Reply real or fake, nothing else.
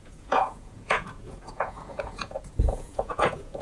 fake